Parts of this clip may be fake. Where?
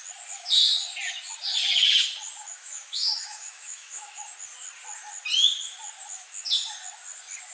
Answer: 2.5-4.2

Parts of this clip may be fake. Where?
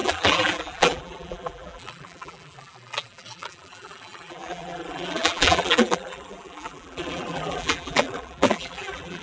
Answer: 0.0-9.2